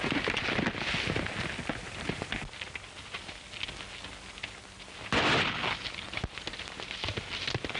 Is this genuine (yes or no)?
yes